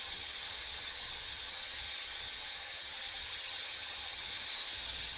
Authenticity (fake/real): fake